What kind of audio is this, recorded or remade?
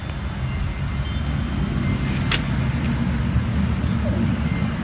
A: recorded